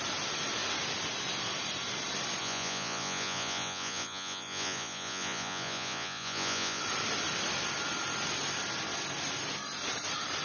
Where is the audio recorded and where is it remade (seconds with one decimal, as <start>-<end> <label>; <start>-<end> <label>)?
0.0-2.4 recorded; 2.4-6.8 remade; 6.8-10.4 recorded